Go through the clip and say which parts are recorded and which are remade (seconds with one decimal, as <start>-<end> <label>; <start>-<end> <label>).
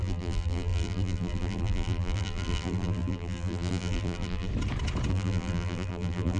0.0-4.5 remade; 4.5-5.1 recorded; 5.1-6.4 remade